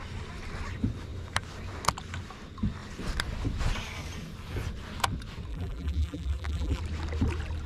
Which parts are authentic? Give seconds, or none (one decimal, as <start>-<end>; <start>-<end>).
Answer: 0.0-5.5; 6.8-7.7